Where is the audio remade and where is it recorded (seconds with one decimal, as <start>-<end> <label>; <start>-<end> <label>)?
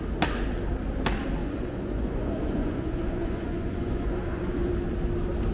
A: 0.0-1.4 recorded; 1.4-4.7 remade; 4.7-5.5 recorded